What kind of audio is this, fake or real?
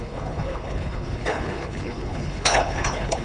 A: fake